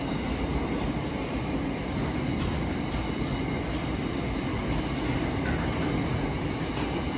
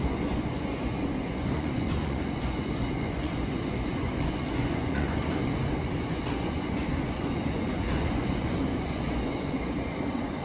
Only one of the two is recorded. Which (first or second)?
first